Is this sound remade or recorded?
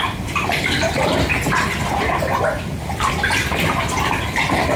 remade